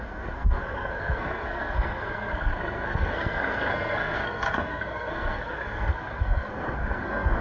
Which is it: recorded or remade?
remade